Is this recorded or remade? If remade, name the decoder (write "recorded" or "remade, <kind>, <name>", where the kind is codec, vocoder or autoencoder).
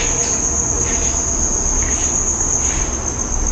recorded